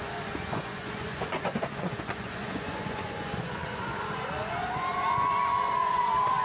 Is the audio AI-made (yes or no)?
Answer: yes